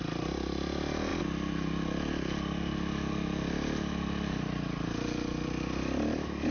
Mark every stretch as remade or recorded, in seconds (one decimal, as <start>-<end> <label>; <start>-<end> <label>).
0.0-6.5 recorded